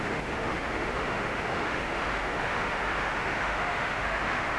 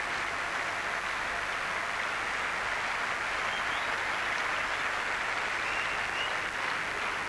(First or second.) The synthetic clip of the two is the first